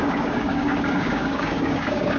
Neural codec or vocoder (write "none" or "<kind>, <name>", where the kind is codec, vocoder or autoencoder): codec, DAC